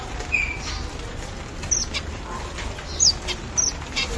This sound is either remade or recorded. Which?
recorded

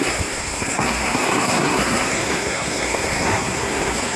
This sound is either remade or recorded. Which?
remade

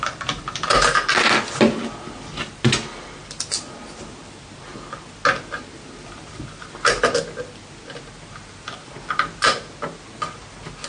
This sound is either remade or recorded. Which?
recorded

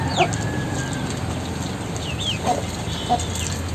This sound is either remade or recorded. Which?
recorded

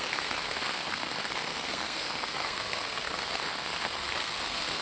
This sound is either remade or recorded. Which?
remade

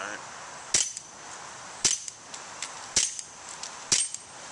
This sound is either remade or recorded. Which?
recorded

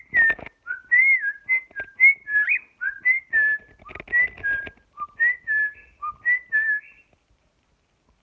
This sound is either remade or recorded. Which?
recorded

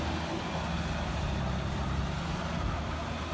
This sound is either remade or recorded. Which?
recorded